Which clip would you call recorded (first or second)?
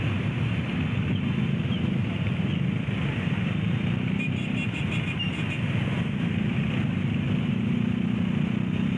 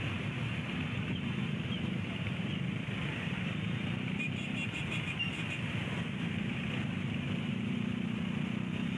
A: first